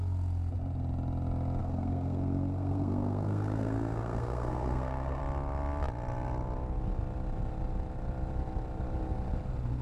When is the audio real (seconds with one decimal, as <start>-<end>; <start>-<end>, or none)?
0.0-1.6; 5.2-9.8